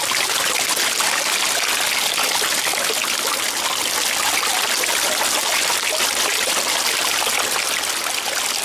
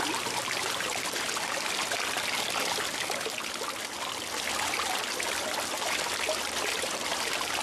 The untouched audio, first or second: first